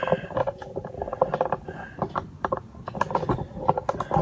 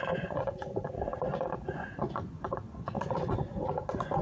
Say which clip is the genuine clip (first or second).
first